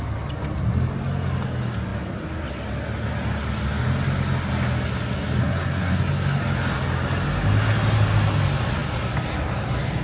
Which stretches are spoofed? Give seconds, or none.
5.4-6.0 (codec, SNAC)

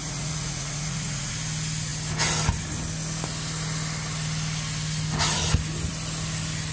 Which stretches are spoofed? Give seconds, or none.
0.0-1.3 (vocoder, Vocos)

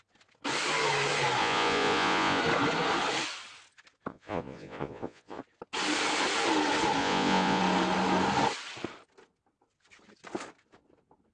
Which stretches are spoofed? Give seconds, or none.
1.4-2.4 (vocoder, Vocos); 4.1-5.4; 7.0-7.6

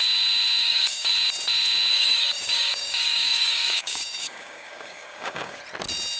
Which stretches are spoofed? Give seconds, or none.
0.6-1.1 (codec, DAC); 1.9-5.6

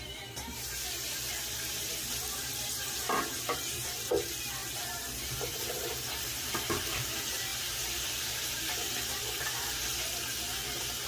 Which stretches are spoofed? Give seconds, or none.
0.0-11.1 (vocoder, BigVGAN v2)

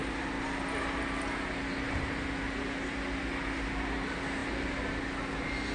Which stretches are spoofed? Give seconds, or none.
none